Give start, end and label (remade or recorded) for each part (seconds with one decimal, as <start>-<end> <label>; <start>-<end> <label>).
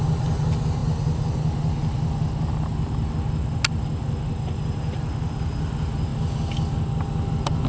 0.0-7.7 recorded